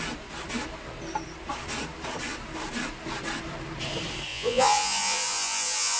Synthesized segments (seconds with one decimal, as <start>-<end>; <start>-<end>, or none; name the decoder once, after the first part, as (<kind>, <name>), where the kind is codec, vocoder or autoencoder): 4.3-6.0 (vocoder, Vocos)